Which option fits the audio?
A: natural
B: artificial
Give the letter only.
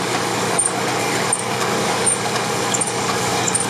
B